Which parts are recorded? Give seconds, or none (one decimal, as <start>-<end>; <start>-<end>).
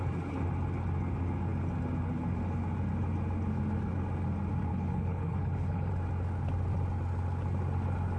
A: 0.0-4.7; 5.9-8.2